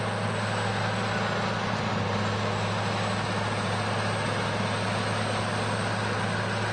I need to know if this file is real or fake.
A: real